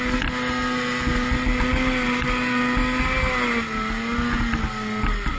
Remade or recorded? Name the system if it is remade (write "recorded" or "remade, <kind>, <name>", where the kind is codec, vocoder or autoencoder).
recorded